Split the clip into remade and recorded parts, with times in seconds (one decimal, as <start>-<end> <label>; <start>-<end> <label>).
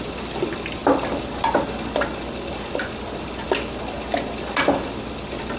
0.0-5.6 recorded